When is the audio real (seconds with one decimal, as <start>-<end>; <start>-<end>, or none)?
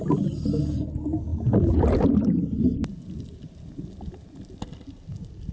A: 0.0-5.5